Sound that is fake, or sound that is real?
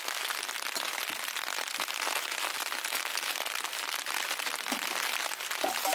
real